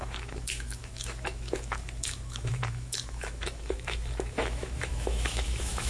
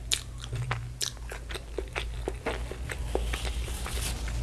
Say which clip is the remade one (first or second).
first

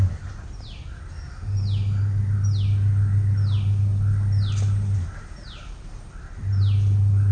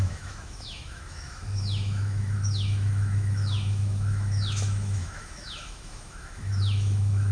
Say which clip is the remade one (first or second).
second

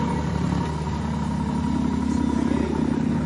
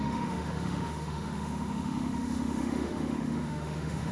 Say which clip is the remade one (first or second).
second